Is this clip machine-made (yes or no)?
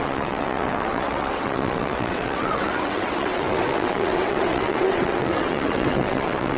yes